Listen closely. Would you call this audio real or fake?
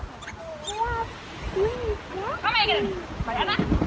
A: real